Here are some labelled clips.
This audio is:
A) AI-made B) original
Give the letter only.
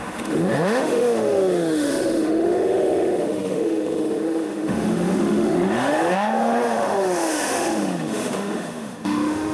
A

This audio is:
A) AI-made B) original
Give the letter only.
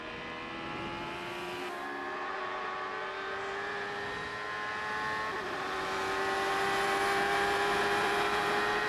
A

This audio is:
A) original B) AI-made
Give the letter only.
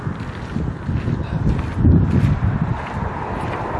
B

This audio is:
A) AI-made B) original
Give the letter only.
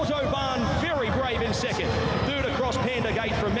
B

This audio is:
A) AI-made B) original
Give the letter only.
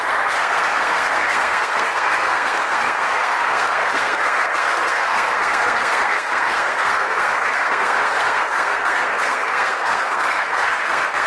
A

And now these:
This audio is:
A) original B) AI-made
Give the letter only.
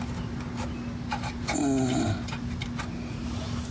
A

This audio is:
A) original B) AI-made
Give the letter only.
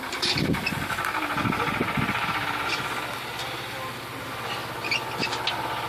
A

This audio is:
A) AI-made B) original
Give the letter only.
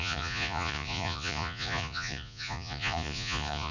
A